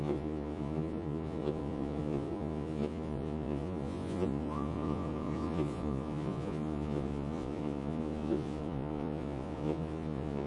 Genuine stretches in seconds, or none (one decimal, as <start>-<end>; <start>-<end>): none